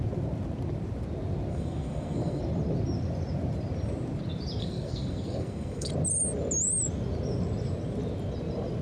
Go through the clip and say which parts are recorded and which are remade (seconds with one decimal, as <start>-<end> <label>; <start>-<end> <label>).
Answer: 0.0-1.5 recorded; 1.5-2.4 remade; 2.4-4.6 recorded; 4.6-5.9 remade; 5.9-8.8 recorded